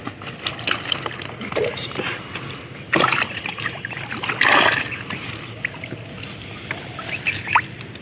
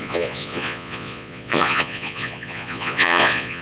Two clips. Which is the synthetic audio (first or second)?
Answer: second